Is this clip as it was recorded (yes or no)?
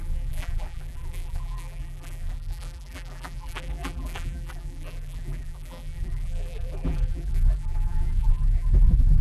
no